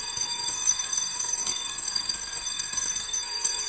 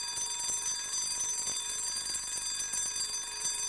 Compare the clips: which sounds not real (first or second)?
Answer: first